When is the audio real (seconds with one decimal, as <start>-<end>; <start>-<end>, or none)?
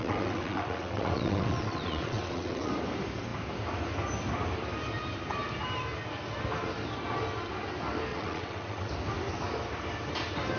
2.7-8.1; 8.9-10.6